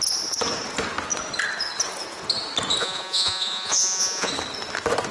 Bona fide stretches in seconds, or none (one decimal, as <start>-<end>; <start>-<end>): 0.0-2.8; 4.3-5.1